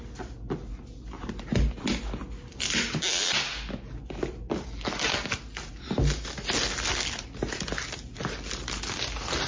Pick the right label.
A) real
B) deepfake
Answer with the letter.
A